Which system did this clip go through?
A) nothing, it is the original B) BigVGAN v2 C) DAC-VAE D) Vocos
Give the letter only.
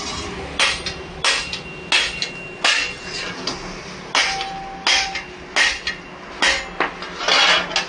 A